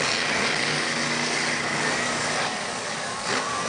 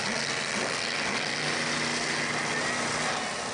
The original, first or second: second